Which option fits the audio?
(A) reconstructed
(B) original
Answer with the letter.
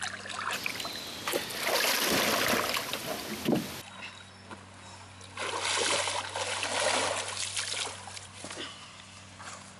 B